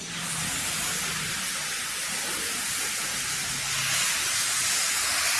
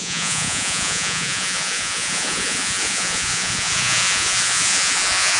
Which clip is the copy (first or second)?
second